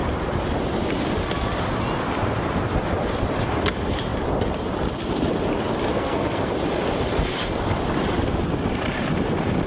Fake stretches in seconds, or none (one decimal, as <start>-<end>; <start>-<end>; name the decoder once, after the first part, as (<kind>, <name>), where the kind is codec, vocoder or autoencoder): 5.9-6.5 (codec, SNAC)